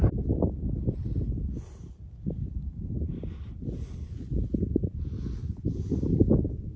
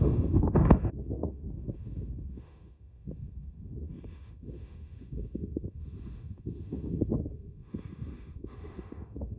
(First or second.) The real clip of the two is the first